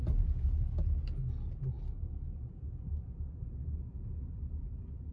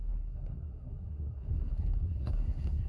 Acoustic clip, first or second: first